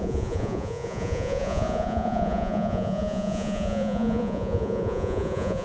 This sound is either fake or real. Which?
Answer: fake